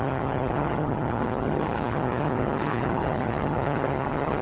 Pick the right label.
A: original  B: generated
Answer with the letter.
B